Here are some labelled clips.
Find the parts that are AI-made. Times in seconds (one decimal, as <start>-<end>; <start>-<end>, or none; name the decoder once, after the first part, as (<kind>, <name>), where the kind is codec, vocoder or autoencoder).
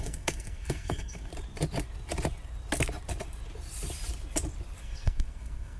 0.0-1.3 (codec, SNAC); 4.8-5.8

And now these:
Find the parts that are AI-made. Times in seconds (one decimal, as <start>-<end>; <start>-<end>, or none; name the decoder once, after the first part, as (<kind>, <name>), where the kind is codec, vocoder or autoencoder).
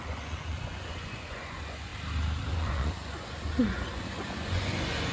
0.0-1.9 (vocoder, Vocos); 2.5-5.1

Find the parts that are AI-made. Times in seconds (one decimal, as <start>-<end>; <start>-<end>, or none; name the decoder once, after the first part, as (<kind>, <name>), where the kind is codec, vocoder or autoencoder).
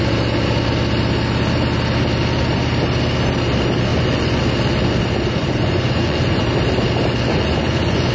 3.9-4.4 (vocoder, Vocos); 5.4-6.4; 7.3-8.1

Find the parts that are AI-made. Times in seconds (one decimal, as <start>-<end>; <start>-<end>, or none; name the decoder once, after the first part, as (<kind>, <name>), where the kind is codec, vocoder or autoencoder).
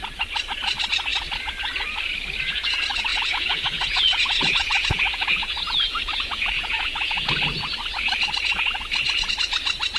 3.1-7.3 (vocoder, Vocos)